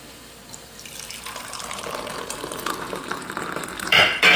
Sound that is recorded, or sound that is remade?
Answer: remade